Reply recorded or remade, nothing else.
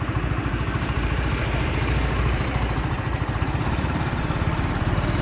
remade